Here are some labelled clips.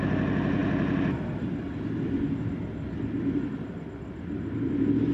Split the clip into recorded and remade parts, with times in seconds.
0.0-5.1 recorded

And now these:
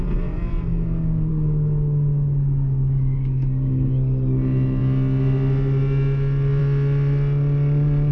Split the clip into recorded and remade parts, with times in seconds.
0.0-8.1 recorded